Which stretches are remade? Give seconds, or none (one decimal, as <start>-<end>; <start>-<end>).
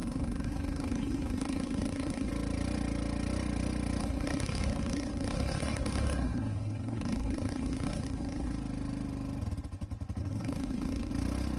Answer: 0.0-2.3; 4.0-8.5; 10.2-11.1